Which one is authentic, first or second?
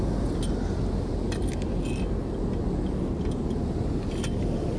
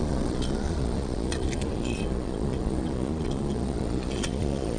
first